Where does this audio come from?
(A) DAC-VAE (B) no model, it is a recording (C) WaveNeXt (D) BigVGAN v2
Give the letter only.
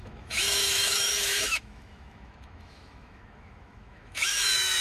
A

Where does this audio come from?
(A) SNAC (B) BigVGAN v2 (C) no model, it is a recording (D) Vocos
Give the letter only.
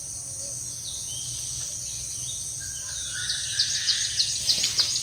C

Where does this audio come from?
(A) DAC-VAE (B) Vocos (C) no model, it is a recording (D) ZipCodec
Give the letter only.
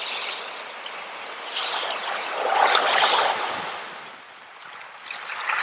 C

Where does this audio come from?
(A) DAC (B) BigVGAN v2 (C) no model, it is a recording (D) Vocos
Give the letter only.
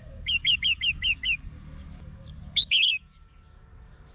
A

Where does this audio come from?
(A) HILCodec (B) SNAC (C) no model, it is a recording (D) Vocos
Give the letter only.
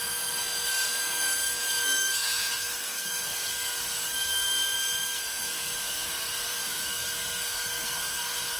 B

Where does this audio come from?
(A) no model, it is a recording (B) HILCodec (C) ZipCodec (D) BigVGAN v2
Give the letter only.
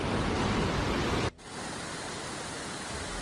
A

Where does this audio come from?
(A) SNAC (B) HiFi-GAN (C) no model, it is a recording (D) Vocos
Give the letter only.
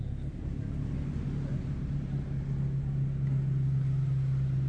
C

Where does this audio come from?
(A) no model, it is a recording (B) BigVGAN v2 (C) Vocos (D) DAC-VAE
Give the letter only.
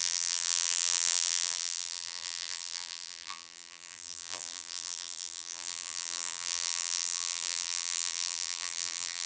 B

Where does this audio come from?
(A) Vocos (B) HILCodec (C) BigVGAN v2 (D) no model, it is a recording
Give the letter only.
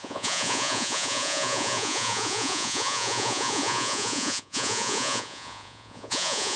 A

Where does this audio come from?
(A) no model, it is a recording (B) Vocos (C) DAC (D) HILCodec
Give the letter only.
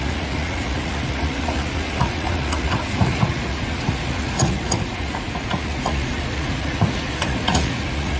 B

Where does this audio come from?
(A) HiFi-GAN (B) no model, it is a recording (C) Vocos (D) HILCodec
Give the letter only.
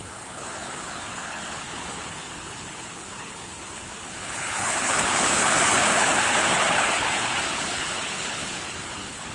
D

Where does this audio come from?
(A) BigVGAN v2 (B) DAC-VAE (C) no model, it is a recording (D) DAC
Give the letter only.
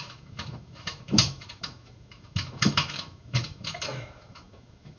B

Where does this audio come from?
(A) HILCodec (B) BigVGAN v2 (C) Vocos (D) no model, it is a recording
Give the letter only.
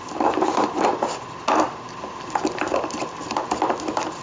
D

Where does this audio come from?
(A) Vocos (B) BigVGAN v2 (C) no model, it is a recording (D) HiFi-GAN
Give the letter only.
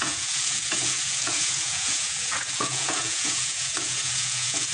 A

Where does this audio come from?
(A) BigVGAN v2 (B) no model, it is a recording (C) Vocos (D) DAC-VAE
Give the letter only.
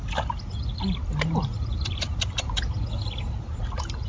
B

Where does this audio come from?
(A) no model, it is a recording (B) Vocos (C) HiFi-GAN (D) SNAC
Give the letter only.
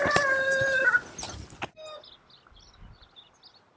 A